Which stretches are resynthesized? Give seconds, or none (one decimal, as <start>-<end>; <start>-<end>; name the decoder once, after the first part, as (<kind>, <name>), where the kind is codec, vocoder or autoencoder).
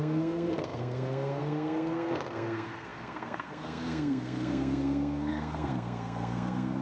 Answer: 0.0-6.8 (codec, SNAC)